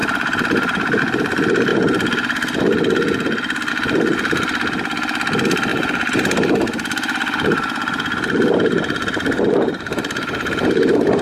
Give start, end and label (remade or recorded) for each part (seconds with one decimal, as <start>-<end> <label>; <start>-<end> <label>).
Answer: 0.0-1.0 remade; 1.0-5.7 recorded; 5.7-11.2 remade